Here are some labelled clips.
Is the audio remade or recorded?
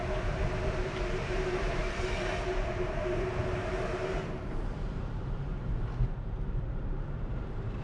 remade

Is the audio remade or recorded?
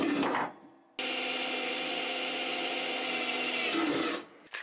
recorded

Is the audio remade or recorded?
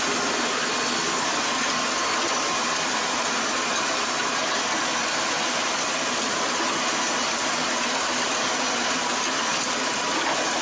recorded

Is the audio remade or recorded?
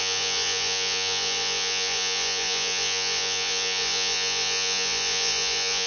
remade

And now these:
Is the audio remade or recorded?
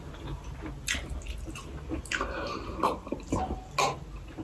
recorded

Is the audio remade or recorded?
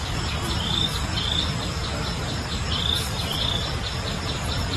recorded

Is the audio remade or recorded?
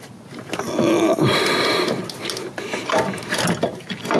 recorded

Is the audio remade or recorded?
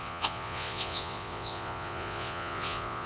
remade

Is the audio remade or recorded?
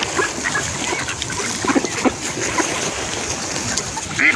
recorded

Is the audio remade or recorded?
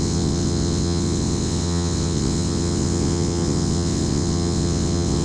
remade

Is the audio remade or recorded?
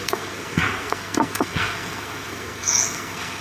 remade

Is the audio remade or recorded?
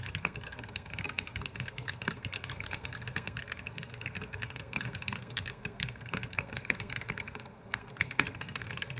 remade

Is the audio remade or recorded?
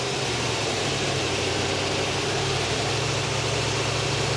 remade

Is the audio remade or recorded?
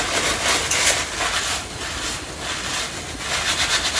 recorded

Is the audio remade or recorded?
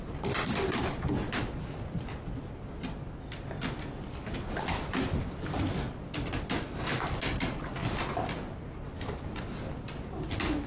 recorded